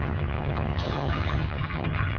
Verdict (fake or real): fake